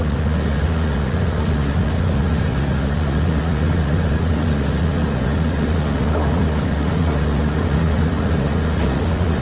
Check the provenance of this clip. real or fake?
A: fake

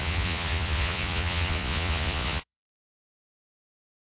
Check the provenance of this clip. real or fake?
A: fake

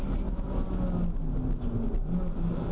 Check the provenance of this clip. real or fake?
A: real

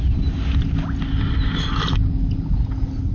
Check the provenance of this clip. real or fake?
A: real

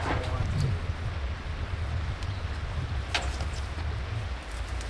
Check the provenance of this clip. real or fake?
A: real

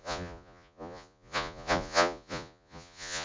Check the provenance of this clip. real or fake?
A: fake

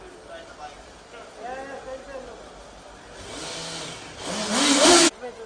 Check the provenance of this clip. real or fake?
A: real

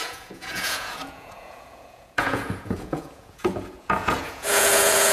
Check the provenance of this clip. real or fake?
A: fake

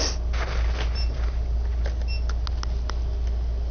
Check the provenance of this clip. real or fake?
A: real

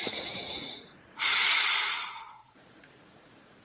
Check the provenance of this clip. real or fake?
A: fake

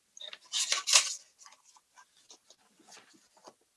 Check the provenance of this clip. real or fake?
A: real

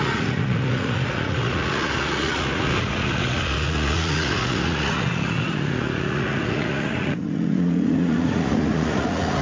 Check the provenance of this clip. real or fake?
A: fake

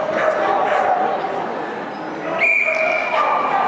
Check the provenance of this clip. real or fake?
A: real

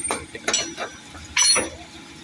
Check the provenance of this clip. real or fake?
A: real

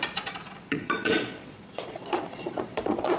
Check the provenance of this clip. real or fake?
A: fake